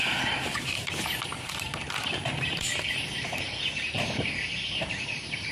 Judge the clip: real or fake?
fake